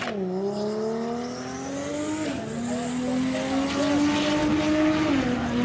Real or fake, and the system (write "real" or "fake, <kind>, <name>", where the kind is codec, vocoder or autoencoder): real